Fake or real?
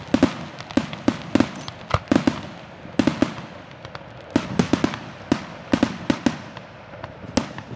real